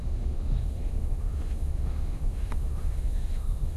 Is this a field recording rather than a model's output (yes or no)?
no